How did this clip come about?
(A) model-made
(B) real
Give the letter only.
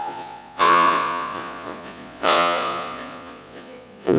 A